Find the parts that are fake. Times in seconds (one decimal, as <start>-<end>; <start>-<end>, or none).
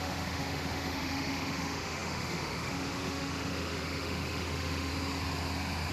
0.0-4.9